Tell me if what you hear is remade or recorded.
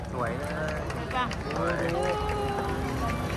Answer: recorded